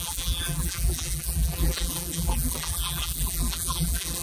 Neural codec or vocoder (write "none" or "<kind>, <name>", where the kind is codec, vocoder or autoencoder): vocoder, BigVGAN v2